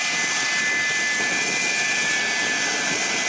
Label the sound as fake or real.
real